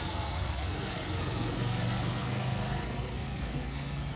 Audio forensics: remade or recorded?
remade